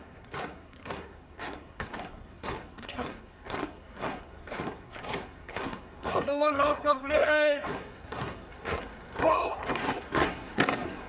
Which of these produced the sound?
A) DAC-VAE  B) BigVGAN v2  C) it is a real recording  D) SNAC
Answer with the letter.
D